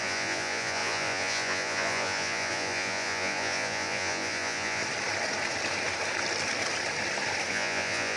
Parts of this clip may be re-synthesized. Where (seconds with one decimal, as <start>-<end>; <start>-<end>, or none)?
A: 0.0-4.8; 7.5-8.2